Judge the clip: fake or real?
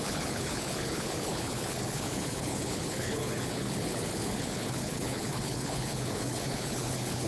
fake